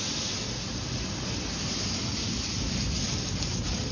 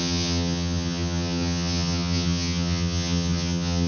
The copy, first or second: second